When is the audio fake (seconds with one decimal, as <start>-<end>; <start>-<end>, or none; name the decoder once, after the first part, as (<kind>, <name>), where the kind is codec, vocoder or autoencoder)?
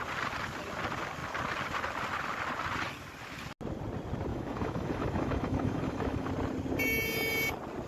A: 4.3-6.3 (autoencoder, DAC-VAE)